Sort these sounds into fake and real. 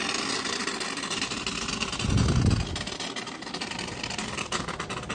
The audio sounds real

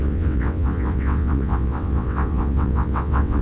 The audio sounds fake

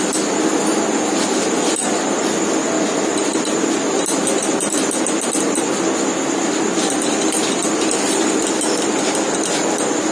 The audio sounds real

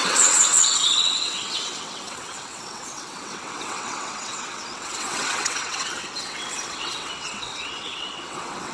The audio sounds fake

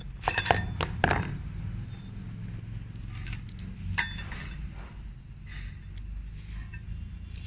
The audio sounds real